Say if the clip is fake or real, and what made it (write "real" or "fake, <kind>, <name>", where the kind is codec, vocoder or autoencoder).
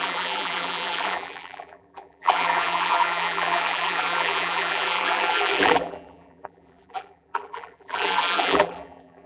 fake, vocoder, BigVGAN v2